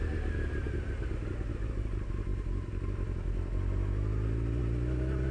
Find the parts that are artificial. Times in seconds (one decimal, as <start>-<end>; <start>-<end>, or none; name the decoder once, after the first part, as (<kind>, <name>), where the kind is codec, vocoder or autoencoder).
none